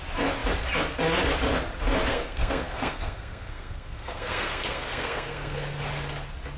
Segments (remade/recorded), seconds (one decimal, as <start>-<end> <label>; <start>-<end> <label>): 0.0-2.1 recorded; 2.1-5.8 remade; 5.8-6.6 recorded